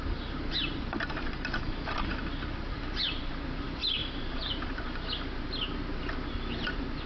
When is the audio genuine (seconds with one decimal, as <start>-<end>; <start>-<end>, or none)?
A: 2.1-2.6